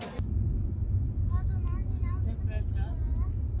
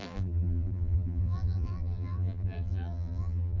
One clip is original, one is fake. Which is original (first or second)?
first